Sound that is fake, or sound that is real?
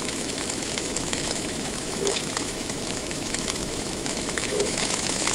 fake